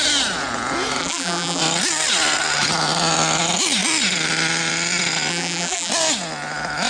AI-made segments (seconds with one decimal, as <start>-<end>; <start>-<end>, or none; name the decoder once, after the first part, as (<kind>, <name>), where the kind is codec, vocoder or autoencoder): 1.0-1.6 (vocoder, BigVGAN v2); 5.3-5.9